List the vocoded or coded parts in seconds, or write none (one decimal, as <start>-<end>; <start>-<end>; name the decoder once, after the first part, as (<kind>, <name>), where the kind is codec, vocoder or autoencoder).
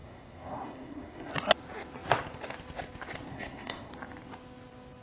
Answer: 0.0-1.3 (codec, SNAC); 3.3-3.9